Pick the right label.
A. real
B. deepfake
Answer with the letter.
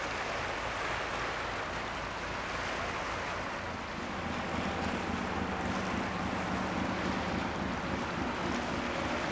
A